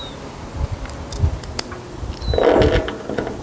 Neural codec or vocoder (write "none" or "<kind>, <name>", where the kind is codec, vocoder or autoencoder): none